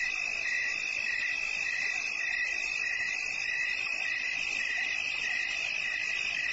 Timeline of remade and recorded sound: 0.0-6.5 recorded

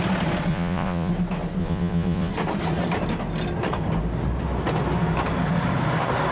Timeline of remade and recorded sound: 0.0-0.5 recorded; 0.5-1.1 remade; 1.1-1.6 recorded; 1.6-2.3 remade; 2.3-6.3 recorded

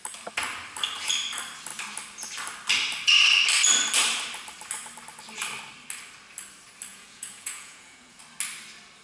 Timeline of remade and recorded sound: 0.0-6.9 recorded; 6.9-8.2 remade; 8.2-9.0 recorded

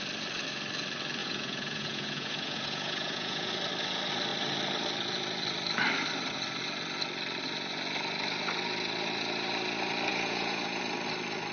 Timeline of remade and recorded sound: 0.0-1.2 recorded; 1.2-3.5 remade; 3.5-10.1 recorded; 10.1-10.8 remade; 10.8-11.5 recorded

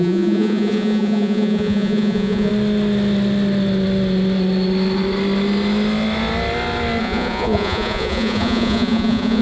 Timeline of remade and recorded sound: 0.0-2.5 remade; 2.5-7.0 recorded; 7.0-9.4 remade

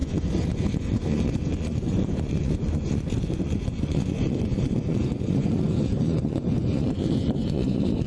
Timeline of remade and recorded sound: 0.0-8.1 remade